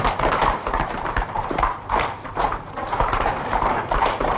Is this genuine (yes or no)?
no